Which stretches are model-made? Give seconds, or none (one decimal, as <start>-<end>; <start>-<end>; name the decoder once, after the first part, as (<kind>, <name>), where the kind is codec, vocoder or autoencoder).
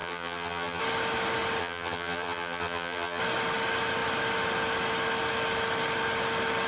0.0-0.8 (vocoder, BigVGAN v2); 1.6-3.2